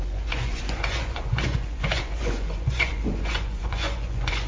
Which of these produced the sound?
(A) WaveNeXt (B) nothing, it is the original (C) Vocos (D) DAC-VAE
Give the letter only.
C